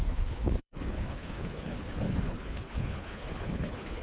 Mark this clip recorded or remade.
remade